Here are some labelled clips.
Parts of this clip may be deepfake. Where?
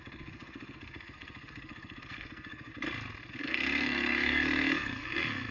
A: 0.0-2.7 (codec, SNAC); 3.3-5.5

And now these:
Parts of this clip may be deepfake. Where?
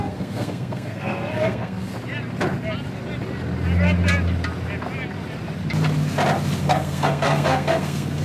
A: 0.0-1.9 (codec, SNAC); 6.6-8.2